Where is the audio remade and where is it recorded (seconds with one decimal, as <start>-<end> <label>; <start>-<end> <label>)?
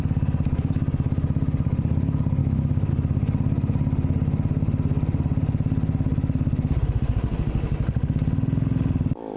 0.0-2.4 recorded; 2.4-2.9 remade; 2.9-9.4 recorded